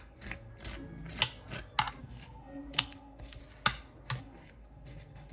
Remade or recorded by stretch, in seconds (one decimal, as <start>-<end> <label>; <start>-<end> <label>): 0.0-0.5 remade; 0.5-2.0 recorded; 2.0-3.4 remade; 3.4-4.2 recorded; 4.2-5.3 remade